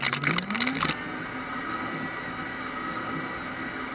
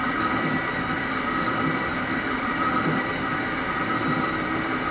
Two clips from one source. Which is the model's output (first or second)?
second